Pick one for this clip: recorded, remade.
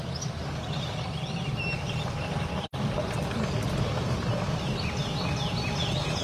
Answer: recorded